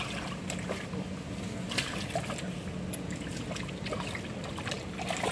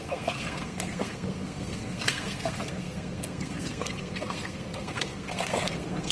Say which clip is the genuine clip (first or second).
first